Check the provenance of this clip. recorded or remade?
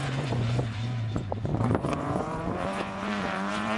remade